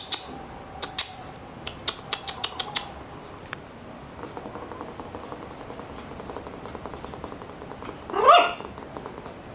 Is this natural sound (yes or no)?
yes